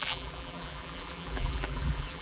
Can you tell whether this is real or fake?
fake